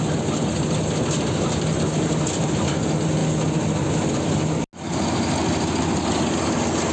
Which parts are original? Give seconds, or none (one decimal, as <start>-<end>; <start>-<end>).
0.0-6.9